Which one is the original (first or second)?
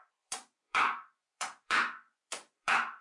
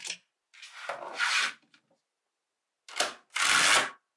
second